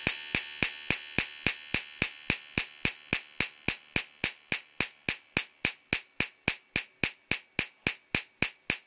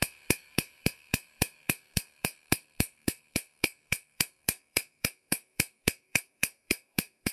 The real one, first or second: first